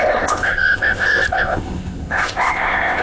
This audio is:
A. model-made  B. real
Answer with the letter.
A